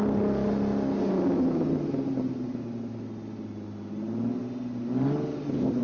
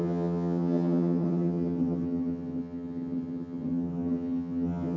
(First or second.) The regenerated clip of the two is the second